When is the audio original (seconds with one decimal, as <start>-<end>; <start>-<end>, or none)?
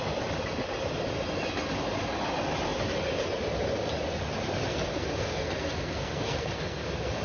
0.0-4.7